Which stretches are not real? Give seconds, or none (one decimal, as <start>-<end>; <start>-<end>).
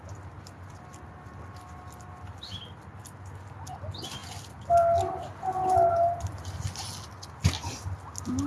none